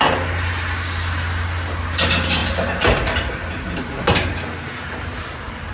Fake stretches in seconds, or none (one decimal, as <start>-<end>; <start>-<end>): none